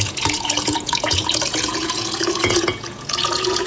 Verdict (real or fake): fake